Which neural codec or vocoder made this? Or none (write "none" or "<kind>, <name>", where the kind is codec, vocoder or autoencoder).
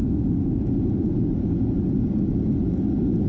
none